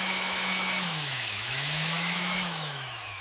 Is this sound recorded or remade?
remade